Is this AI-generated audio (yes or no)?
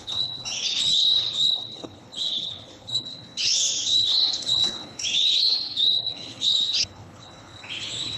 yes